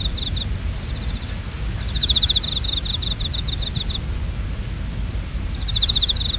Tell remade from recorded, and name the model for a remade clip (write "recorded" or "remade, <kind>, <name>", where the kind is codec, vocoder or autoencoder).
recorded